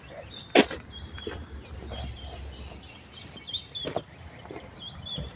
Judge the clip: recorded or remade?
recorded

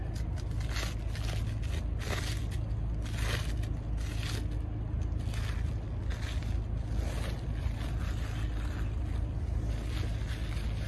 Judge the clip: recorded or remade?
recorded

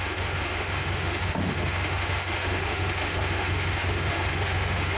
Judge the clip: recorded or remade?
remade